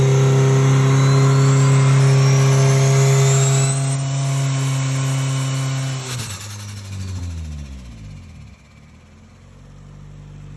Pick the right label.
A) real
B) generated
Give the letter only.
A